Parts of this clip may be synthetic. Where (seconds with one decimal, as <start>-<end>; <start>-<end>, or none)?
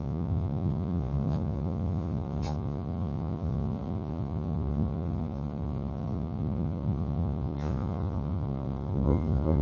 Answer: 0.0-9.6